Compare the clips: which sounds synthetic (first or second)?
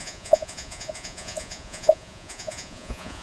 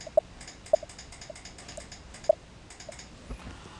first